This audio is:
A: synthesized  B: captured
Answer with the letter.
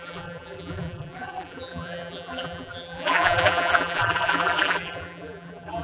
A